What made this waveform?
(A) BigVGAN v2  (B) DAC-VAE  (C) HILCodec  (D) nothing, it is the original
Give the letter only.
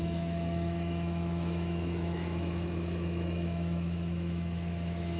B